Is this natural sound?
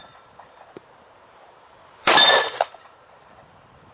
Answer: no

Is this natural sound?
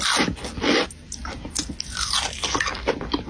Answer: yes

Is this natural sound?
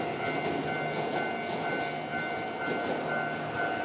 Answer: yes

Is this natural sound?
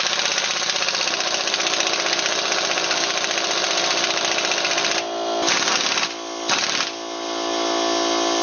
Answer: yes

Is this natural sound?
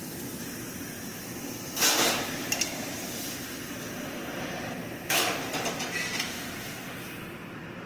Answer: yes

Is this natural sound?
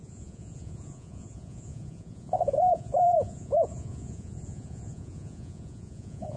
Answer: no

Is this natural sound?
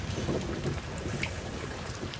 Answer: no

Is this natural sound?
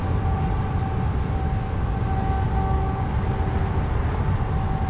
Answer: yes